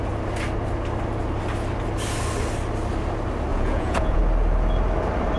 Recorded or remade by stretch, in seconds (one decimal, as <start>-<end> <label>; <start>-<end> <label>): 0.0-3.5 recorded; 3.5-4.2 remade; 4.2-5.4 recorded